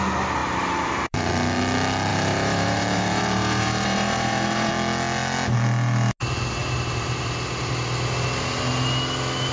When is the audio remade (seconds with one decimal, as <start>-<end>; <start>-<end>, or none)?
0.4-1.3; 2.1-4.7; 6.6-7.7